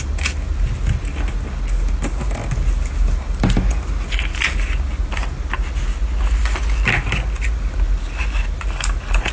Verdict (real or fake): real